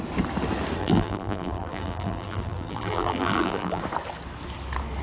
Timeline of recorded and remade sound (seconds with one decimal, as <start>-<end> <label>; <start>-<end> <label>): 0.0-0.8 recorded; 0.8-3.8 remade; 3.8-5.0 recorded